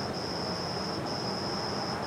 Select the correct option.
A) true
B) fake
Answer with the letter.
A